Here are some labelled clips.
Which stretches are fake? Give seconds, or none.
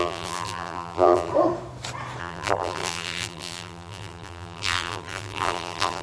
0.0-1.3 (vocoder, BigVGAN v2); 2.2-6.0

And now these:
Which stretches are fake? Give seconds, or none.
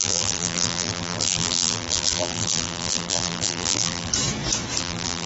0.0-4.1 (vocoder, BigVGAN v2); 4.8-5.3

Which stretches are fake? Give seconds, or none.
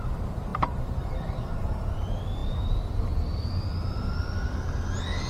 0.5-1.1 (vocoder, BigVGAN v2); 1.5-2.0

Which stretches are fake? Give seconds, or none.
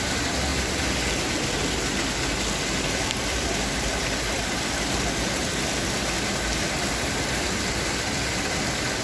0.5-1.4 (vocoder, BigVGAN v2)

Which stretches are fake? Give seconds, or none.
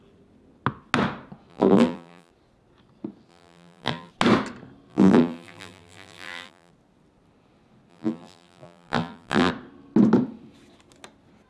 1.5-2.3 (vocoder, BigVGAN v2); 3.3-4.1; 4.9-6.7; 7.9-9.5